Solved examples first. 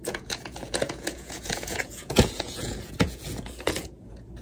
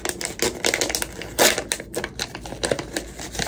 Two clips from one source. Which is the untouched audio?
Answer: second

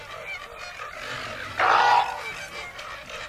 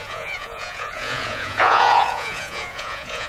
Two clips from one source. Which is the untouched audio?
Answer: first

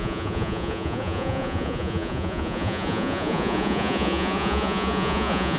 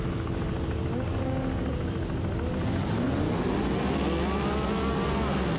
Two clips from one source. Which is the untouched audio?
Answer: second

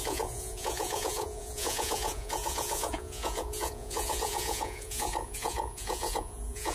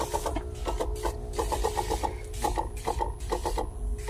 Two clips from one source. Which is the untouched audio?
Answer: second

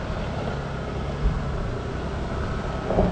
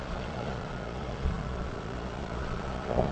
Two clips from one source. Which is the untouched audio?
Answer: first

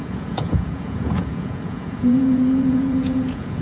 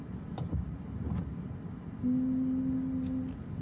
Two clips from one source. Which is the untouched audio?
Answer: second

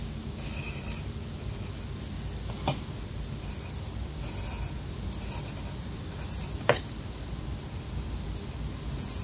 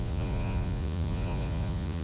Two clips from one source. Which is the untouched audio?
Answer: first